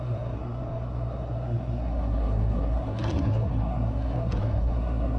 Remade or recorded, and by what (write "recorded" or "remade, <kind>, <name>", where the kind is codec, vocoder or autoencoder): remade, codec, SNAC